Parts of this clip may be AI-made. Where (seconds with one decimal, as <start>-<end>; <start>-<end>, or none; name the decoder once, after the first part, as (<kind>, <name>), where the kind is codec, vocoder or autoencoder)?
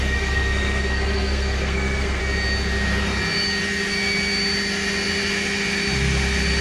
0.0-2.2 (codec, SNAC)